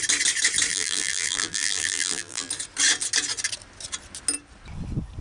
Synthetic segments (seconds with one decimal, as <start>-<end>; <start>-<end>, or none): 0.7-2.5